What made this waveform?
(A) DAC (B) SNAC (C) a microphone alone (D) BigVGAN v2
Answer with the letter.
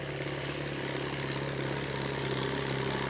C